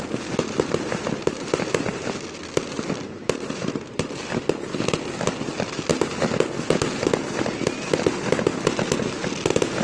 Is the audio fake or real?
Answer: real